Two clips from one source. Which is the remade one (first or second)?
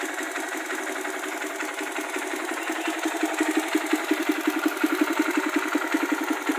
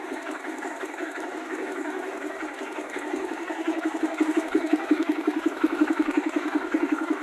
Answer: second